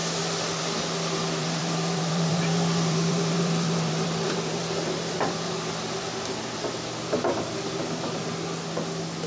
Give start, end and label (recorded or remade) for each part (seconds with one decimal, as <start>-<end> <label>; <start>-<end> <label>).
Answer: 0.0-1.4 recorded; 1.4-6.1 remade; 6.1-9.3 recorded